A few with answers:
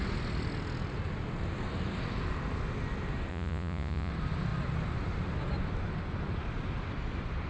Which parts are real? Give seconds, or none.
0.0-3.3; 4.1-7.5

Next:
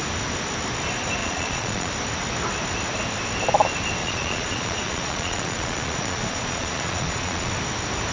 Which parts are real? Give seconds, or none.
0.0-1.2; 1.9-4.0; 7.5-8.1

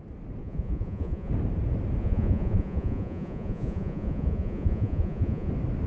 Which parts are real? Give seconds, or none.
0.0-0.4; 1.3-2.0; 5.5-5.9

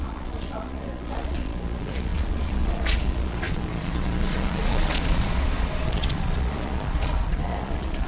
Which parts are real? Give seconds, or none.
none

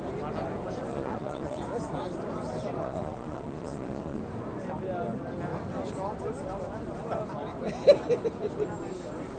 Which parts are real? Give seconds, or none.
0.0-0.9; 1.6-2.8; 4.2-9.4